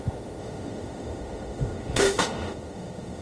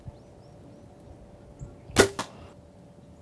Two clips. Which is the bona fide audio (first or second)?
second